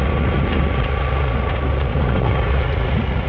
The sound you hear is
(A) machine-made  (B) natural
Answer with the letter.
A